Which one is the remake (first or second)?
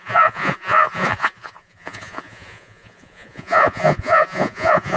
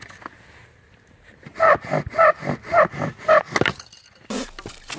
first